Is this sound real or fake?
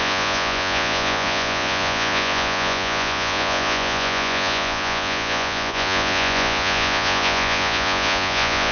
fake